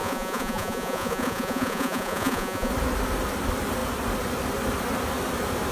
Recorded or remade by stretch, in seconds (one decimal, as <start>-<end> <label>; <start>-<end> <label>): 0.0-2.7 remade; 2.7-5.7 recorded